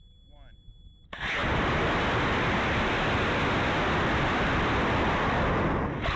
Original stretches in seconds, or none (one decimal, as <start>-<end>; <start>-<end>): 0.0-6.2